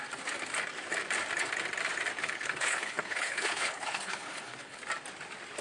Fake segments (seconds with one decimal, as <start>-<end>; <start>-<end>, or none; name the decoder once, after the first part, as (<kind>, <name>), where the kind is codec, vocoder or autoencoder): 2.2-4.8 (codec, HILCodec)